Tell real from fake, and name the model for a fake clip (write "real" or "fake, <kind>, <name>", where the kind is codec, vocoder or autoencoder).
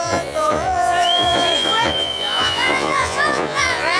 fake, vocoder, Vocos